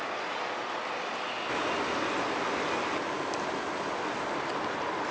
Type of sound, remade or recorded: recorded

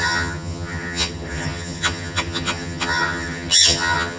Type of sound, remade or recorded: remade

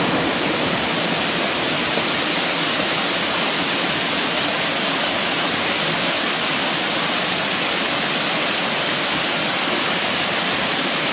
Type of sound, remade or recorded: recorded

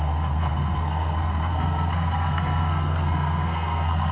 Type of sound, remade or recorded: remade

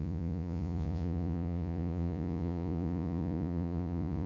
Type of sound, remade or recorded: remade